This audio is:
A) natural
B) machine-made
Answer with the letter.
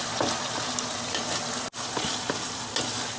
A